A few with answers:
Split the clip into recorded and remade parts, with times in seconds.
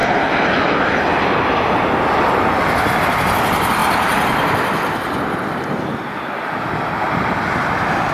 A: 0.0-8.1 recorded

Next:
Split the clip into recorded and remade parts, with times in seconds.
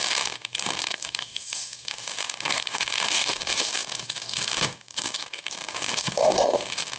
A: 0.0-7.0 remade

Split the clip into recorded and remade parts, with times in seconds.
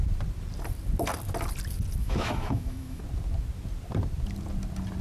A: 0.0-2.0 recorded; 2.0-3.0 remade; 3.0-5.0 recorded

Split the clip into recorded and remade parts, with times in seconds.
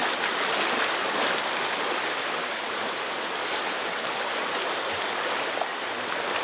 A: 0.0-6.4 recorded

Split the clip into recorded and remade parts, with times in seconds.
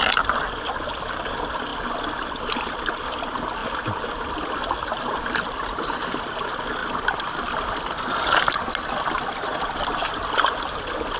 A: 0.0-1.7 recorded; 1.7-3.0 remade; 3.0-11.2 recorded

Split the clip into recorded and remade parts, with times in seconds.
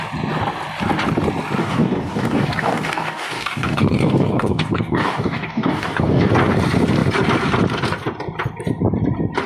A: 0.0-1.6 recorded; 1.6-6.3 remade; 6.3-9.5 recorded